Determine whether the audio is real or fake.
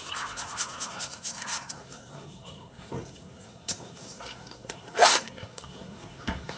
fake